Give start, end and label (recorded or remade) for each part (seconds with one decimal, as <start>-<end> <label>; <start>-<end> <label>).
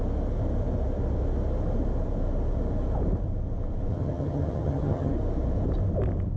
0.0-3.9 recorded; 3.9-5.1 remade; 5.1-6.4 recorded